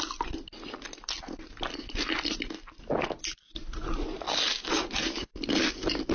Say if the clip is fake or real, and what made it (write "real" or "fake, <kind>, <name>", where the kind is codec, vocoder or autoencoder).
real